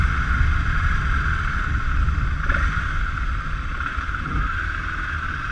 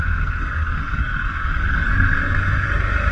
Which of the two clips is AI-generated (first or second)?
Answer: second